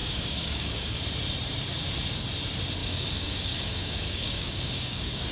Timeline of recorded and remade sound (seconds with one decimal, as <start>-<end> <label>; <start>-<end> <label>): 0.0-1.0 remade; 1.0-2.8 recorded; 2.8-5.3 remade